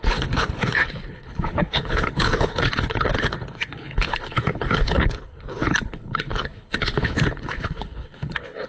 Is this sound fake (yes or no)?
yes